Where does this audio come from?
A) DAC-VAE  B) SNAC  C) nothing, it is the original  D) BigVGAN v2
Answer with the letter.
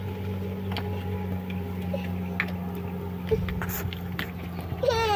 C